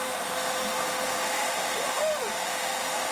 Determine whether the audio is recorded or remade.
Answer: remade